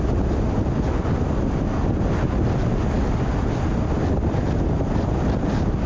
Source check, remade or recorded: recorded